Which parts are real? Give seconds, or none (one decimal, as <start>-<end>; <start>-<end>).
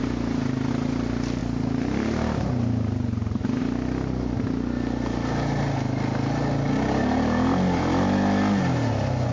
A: 0.0-9.3